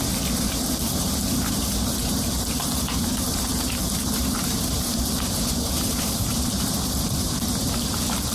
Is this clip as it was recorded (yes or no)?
no